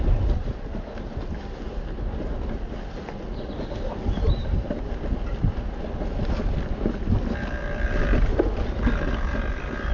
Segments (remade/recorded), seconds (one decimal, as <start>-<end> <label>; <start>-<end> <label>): 0.0-9.9 recorded